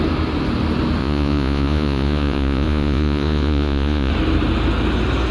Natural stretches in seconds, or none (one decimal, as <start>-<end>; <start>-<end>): 0.0-1.0; 4.1-5.3